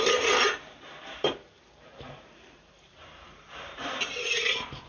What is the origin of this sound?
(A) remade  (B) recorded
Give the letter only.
A